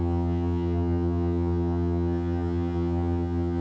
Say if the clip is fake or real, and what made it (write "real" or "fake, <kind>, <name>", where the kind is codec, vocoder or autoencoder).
fake, vocoder, HiFi-GAN